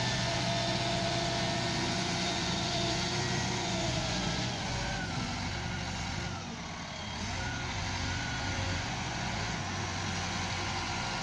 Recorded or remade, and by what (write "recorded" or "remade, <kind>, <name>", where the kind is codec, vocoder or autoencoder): remade, vocoder, Vocos